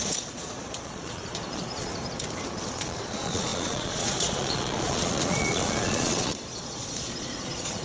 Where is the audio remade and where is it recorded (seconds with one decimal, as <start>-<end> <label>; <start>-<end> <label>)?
0.0-1.9 remade; 1.9-2.7 recorded; 2.7-7.8 remade